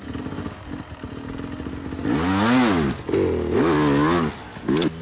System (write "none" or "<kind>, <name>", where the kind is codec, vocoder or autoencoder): none